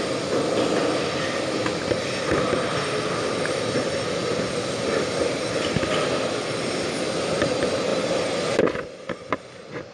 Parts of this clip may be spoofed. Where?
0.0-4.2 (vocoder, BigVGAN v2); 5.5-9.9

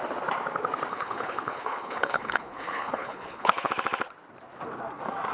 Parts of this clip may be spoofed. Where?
0.9-3.7 (codec, HILCodec)

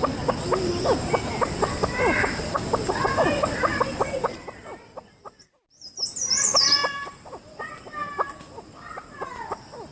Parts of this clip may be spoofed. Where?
6.8-7.6 (vocoder, BigVGAN v2)